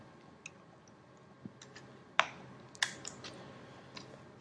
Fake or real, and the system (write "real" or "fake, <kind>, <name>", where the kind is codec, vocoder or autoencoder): real